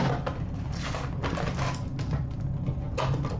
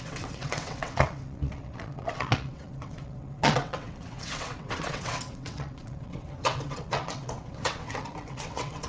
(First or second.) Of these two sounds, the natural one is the first